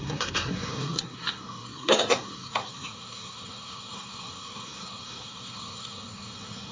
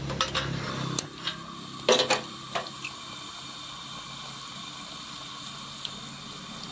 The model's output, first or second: first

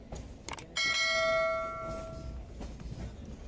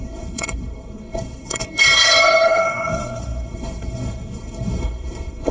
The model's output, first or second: second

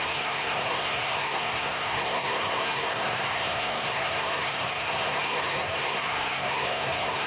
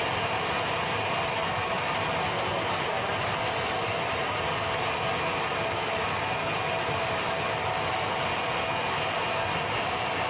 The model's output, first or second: first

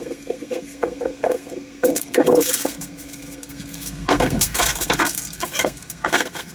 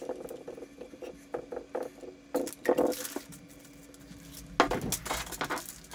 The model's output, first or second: first